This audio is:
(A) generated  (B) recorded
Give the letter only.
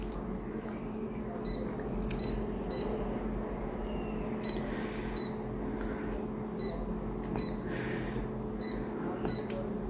B